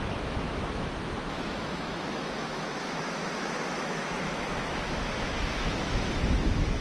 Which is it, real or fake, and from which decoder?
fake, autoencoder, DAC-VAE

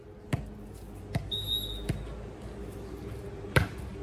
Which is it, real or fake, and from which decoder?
real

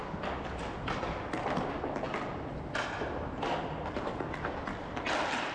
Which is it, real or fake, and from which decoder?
real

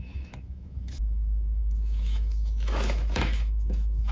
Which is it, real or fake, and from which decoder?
fake, autoencoder, DAC-VAE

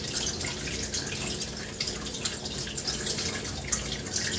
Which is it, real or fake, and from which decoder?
real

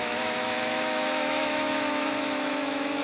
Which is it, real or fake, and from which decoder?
fake, autoencoder, DAC-VAE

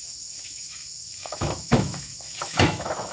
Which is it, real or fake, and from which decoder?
fake, autoencoder, DAC-VAE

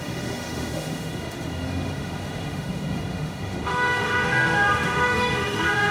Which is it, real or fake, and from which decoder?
fake, autoencoder, DAC-VAE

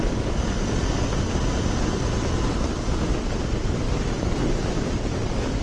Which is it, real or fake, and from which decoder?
real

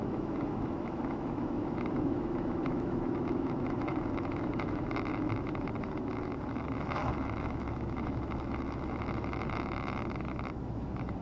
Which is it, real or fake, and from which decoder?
fake, autoencoder, DAC-VAE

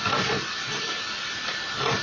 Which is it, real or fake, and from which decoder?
real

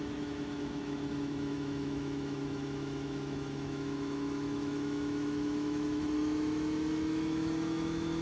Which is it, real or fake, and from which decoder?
fake, autoencoder, DAC-VAE